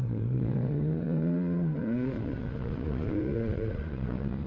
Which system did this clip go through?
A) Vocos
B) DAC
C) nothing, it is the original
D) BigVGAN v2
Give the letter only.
A